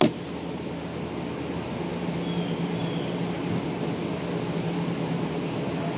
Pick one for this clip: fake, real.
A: real